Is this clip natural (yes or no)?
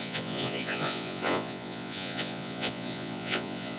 no